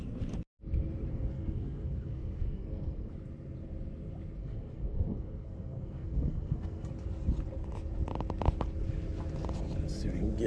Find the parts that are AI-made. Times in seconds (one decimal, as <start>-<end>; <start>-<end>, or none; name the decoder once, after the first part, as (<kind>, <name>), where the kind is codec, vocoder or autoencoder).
1.1-3.1 (codec, SNAC); 4.4-6.9